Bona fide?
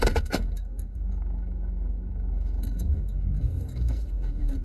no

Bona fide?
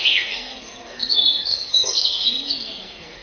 no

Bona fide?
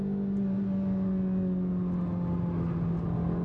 yes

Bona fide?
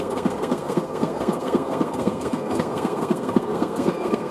no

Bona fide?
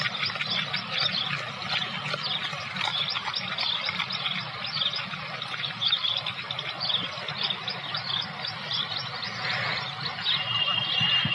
yes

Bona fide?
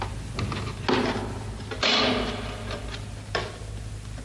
yes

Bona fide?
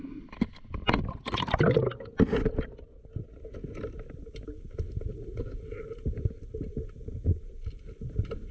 yes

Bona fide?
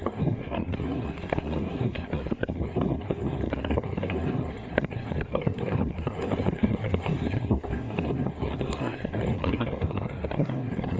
no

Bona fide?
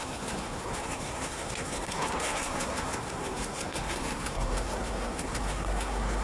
no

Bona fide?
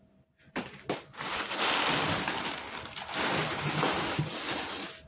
yes